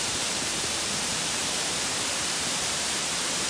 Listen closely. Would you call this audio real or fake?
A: fake